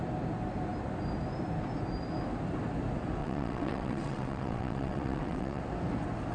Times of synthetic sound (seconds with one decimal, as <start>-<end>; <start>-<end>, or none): 3.2-5.6